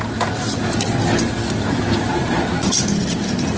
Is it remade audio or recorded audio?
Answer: recorded